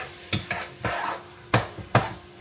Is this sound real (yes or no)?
yes